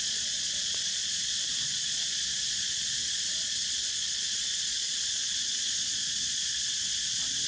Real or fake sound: fake